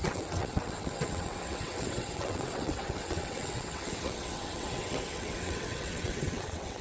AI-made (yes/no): yes